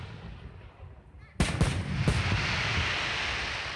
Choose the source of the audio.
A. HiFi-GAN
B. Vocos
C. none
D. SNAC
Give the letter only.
C